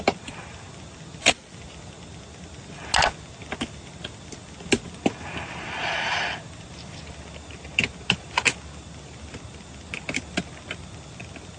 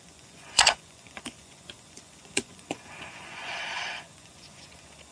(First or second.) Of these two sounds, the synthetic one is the second